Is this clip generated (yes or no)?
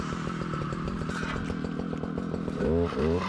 no